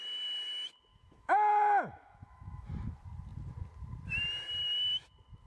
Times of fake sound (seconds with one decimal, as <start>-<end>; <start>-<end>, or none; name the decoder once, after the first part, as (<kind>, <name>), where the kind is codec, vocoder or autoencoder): 0.9-2.7 (autoencoder, DAC-VAE)